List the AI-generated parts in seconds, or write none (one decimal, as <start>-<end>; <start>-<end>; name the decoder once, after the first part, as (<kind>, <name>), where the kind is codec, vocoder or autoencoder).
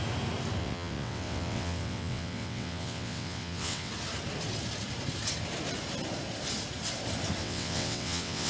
0.6-3.9 (vocoder, WaveNeXt); 7.4-8.5